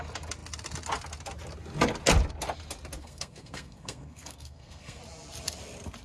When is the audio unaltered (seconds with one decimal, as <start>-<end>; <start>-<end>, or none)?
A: 0.0-3.0; 5.0-6.0